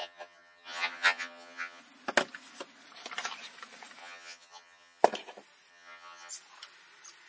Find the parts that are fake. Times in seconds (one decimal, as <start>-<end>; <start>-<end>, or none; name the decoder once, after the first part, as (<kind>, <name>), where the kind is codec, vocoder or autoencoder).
0.0-1.8 (vocoder, HiFi-GAN); 4.0-5.0; 5.7-6.3